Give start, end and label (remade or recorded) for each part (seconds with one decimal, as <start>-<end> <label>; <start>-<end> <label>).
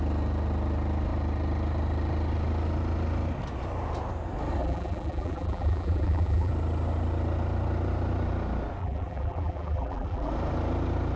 0.0-4.6 recorded; 4.6-6.5 remade; 6.5-8.8 recorded; 8.8-10.3 remade; 10.3-11.2 recorded